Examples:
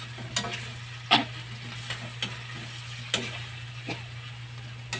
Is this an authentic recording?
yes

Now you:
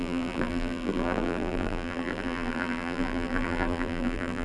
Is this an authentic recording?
no